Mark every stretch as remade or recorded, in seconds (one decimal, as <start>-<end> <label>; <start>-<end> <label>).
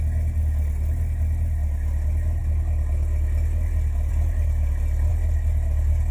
0.0-6.1 recorded